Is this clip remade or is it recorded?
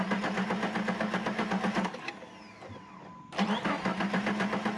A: recorded